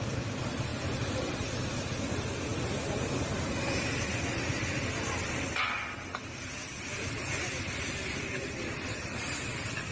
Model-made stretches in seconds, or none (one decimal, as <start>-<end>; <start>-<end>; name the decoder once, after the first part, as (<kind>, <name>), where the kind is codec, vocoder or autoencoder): none